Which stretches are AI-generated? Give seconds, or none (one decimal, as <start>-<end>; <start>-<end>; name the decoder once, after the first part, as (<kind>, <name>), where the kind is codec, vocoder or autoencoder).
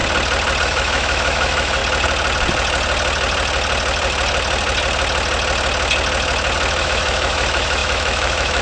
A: 0.6-1.8 (autoencoder, DAC-VAE); 6.8-8.6